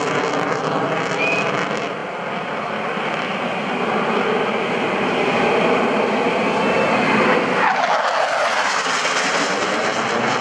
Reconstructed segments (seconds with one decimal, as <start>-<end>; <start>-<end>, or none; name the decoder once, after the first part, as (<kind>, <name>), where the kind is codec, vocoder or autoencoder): 2.0-2.5 (vocoder, BigVGAN v2)